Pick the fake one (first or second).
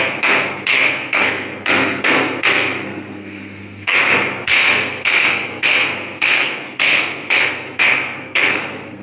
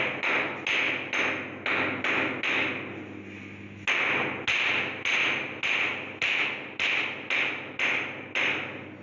first